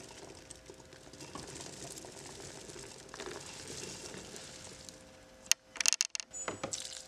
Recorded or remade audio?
recorded